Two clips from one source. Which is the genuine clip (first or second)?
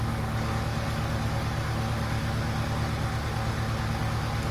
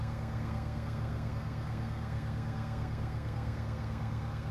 first